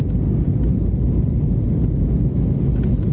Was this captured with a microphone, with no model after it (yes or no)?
yes